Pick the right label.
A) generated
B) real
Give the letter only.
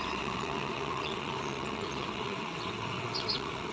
A